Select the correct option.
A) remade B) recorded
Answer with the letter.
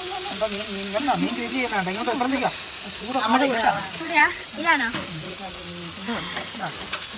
A